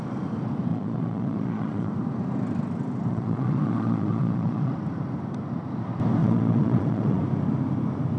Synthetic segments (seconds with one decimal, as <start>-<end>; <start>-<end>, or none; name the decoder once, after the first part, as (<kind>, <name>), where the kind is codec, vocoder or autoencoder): 0.7-1.9 (vocoder, Vocos); 3.1-4.7; 6.2-7.2